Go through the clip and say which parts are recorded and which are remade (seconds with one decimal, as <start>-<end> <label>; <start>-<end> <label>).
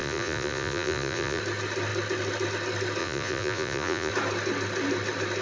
0.0-1.4 remade; 1.4-3.0 recorded; 3.0-4.1 remade; 4.1-5.4 recorded